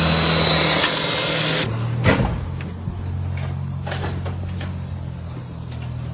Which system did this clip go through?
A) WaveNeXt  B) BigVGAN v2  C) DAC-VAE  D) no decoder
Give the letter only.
D